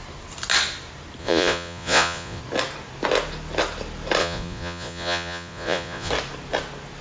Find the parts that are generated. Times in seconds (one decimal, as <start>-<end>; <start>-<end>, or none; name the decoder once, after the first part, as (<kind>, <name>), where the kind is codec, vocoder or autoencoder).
1.2-2.4 (vocoder, Vocos); 4.2-6.1